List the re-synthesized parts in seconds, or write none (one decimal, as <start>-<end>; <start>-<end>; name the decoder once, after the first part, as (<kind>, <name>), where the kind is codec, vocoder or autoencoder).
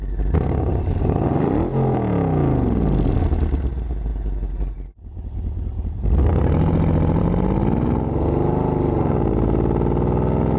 none